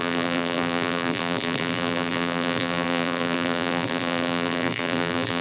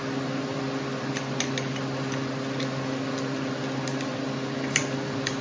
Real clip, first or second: second